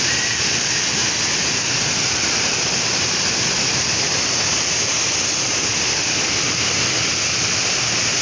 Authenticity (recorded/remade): recorded